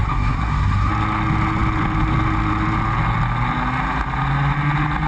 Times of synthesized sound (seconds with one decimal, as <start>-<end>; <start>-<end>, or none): 0.0-0.9